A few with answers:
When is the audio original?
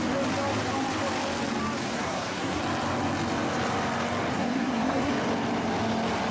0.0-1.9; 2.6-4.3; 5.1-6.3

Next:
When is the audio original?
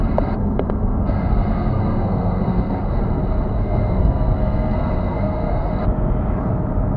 0.0-0.4; 3.0-3.5; 5.7-7.0